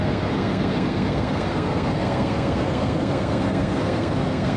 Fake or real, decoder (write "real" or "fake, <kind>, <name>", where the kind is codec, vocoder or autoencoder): fake, codec, SNAC